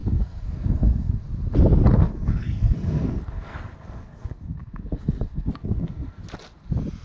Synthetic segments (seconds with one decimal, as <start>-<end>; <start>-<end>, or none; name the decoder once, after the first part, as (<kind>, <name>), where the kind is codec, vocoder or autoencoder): 0.0-1.2 (codec, SNAC); 2.0-6.2